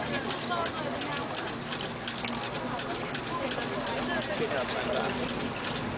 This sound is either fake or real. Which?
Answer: real